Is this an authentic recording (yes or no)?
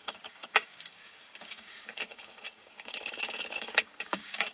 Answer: no